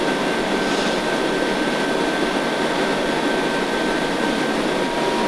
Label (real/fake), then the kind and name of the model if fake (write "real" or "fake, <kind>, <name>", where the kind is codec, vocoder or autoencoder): real